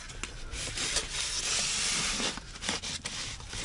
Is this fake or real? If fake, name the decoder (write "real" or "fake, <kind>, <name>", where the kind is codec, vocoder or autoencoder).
real